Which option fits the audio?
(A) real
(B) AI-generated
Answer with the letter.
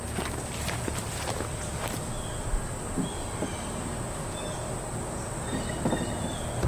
A